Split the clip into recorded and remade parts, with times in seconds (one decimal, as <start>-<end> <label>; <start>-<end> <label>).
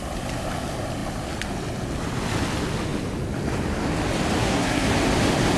0.0-4.4 recorded; 4.4-4.9 remade; 4.9-5.6 recorded